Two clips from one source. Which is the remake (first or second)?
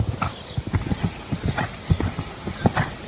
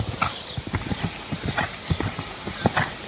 first